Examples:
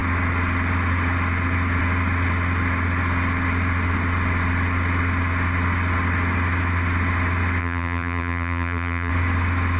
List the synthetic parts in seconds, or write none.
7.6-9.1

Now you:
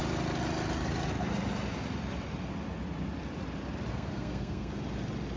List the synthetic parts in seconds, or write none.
3.9-4.7

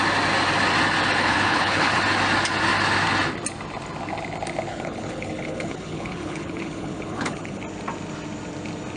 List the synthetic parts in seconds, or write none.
1.2-2.0; 4.7-7.6